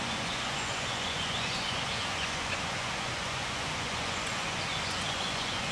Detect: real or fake fake